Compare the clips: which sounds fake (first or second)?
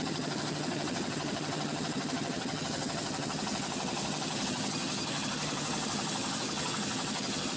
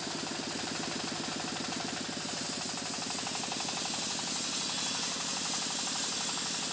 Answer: first